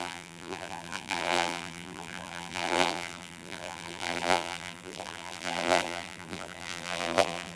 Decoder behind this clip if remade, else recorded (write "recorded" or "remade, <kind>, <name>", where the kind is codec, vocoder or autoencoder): remade, vocoder, BigVGAN v2